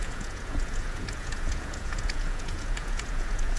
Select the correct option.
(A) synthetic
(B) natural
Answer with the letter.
A